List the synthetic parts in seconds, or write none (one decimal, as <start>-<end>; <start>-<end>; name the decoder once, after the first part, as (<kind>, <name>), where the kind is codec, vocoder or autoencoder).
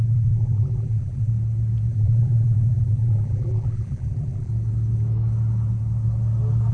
0.0-1.3 (vocoder, BigVGAN v2); 1.9-4.5